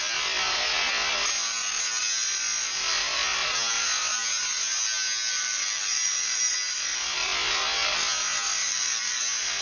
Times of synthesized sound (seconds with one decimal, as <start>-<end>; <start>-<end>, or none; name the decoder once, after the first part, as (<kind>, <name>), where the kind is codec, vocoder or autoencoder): 5.3-6.5 (vocoder, BigVGAN v2); 8.6-9.2